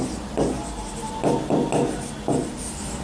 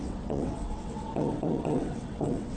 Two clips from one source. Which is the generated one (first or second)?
second